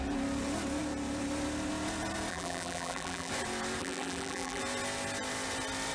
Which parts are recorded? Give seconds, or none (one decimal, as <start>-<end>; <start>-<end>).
0.0-2.3; 3.3-3.8; 4.6-5.9